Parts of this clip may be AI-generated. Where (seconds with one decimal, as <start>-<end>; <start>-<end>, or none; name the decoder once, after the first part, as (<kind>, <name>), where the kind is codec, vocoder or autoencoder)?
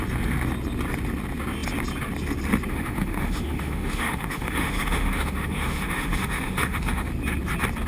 2.7-7.1 (autoencoder, DAC-VAE)